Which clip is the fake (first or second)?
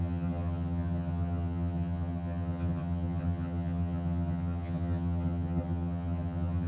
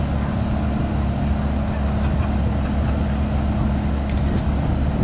first